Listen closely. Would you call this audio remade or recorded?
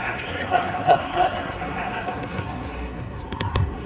remade